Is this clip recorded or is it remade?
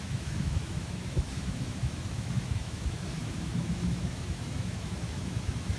remade